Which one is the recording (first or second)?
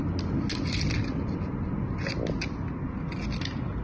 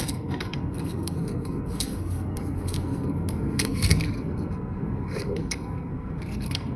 first